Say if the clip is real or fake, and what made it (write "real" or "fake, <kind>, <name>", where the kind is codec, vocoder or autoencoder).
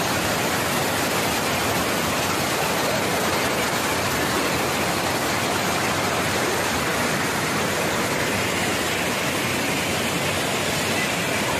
real